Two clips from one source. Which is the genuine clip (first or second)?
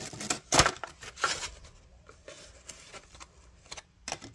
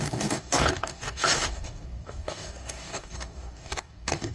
first